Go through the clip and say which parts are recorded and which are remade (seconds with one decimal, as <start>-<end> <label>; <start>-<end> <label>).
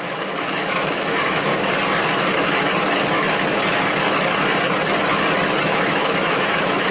0.0-1.5 remade; 1.5-5.6 recorded; 5.6-6.9 remade